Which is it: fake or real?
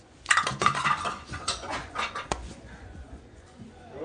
fake